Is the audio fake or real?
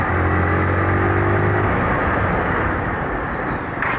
real